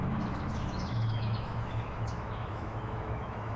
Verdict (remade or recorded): remade